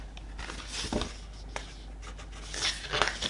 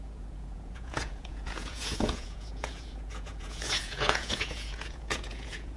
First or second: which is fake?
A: second